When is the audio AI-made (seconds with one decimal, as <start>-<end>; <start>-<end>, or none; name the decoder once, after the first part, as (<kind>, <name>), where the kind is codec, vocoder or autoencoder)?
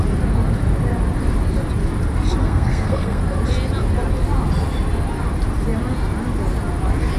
2.4-3.2 (codec, SNAC)